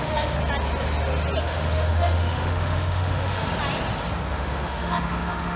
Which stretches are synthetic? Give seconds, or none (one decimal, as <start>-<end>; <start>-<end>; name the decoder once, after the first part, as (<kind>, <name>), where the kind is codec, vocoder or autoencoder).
0.0-0.4 (autoencoder, DAC-VAE); 1.4-3.5; 4.3-5.6